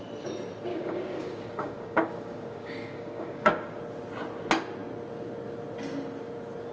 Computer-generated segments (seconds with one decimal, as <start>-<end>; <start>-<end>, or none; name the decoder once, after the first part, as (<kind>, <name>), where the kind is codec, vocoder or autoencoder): 0.7-3.8 (codec, DAC)